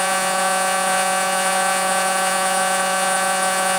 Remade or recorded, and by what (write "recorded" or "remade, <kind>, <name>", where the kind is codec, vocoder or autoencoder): remade, vocoder, Vocos